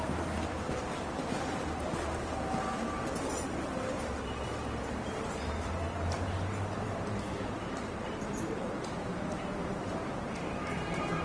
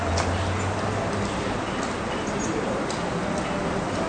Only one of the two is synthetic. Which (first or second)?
first